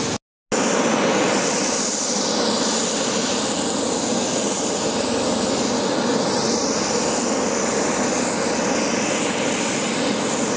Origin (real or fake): real